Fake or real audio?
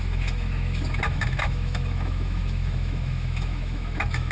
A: fake